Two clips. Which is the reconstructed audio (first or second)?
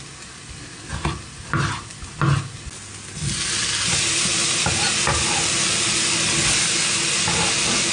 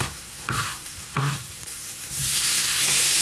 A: second